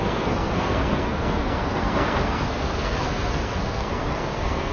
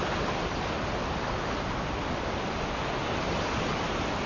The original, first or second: second